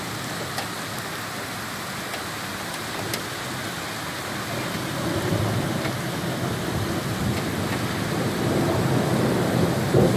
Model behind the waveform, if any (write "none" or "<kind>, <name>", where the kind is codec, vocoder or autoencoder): none